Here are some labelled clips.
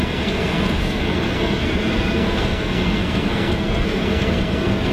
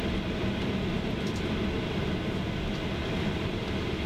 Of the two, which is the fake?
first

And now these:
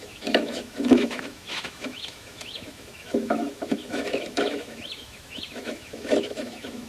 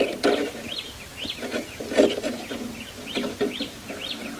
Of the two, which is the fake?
first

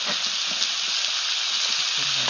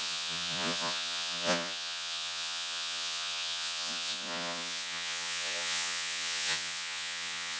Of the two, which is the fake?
second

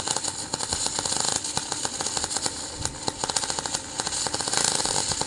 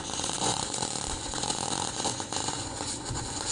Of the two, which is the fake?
second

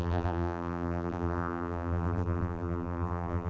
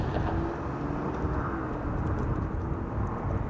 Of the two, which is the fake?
first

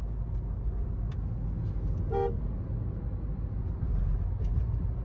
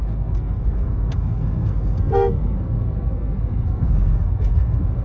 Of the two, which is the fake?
second